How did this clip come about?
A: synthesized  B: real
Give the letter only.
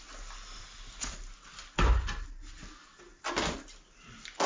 B